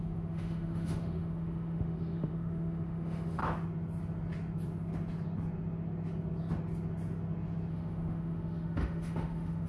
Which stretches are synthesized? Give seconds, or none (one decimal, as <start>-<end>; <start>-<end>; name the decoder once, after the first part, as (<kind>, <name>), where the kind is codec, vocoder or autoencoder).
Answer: 0.0-3.4 (autoencoder, DAC-VAE); 7.7-9.7